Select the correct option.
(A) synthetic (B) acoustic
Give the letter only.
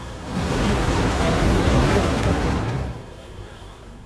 A